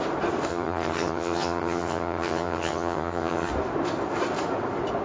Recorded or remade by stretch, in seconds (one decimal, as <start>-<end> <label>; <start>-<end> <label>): 0.0-0.5 recorded; 0.5-3.5 remade; 3.5-5.0 recorded